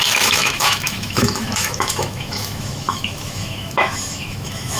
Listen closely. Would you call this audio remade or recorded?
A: remade